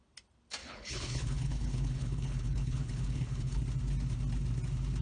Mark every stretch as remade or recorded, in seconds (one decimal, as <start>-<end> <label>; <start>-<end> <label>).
0.0-0.6 recorded; 0.6-3.6 remade; 3.6-5.0 recorded